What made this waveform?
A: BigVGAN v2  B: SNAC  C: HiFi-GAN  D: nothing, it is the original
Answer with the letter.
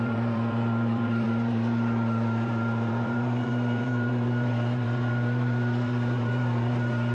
A